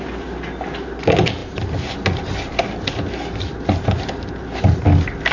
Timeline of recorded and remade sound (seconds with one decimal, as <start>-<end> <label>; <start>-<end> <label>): 0.0-5.3 recorded